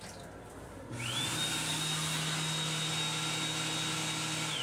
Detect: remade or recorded recorded